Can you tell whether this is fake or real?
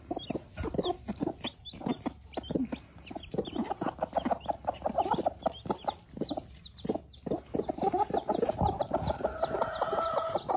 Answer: real